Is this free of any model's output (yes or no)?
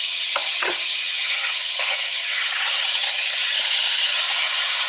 no